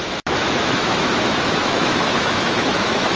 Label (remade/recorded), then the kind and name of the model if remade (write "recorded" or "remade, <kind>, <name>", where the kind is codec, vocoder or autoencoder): remade, autoencoder, DAC-VAE